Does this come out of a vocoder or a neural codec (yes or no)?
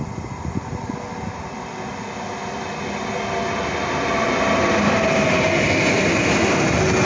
no